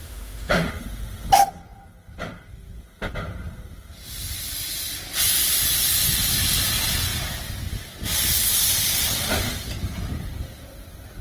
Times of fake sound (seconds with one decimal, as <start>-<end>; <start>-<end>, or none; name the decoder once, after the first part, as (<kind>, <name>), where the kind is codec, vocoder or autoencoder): 0.0-0.7 (autoencoder, DAC-VAE)